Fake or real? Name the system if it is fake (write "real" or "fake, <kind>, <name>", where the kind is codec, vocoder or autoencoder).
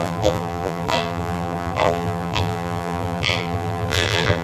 fake, vocoder, BigVGAN v2